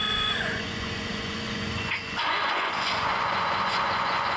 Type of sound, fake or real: fake